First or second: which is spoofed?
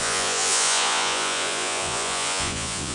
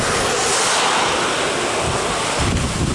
first